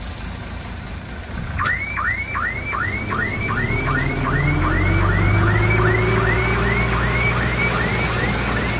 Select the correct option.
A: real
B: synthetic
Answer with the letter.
A